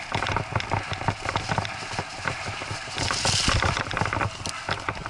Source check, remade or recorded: recorded